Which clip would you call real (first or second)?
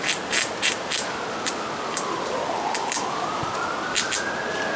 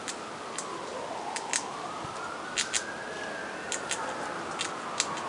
second